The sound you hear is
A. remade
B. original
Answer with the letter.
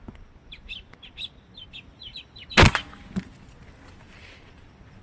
B